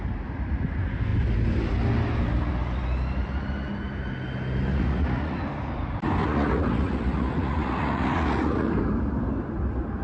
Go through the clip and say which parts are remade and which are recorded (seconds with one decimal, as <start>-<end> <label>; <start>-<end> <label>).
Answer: 0.0-4.7 recorded; 4.7-5.4 remade; 5.4-6.2 recorded; 6.2-8.7 remade; 8.7-10.0 recorded